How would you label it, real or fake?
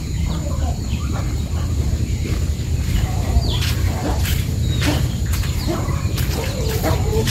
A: fake